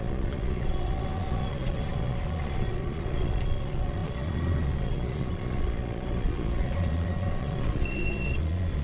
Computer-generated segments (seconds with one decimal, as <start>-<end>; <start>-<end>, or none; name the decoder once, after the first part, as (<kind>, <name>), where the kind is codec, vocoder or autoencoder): 0.0-8.8 (vocoder, Vocos)